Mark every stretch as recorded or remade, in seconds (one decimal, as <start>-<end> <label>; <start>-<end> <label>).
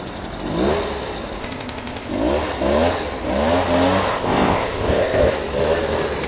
0.0-1.4 recorded; 1.4-2.1 remade; 2.1-4.1 recorded; 4.1-5.3 remade; 5.3-6.3 recorded